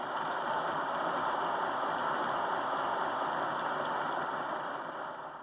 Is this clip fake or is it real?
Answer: real